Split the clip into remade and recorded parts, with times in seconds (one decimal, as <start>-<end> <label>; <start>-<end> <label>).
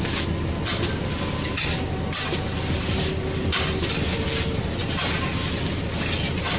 0.0-6.6 recorded